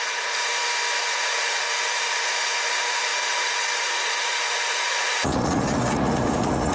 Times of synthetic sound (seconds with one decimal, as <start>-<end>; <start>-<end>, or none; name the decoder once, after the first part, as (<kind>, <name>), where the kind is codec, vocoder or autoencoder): 0.0-0.5 (vocoder, Vocos); 1.0-6.7